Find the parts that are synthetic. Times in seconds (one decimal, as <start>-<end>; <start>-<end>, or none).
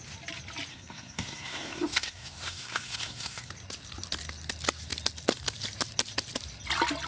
0.7-3.5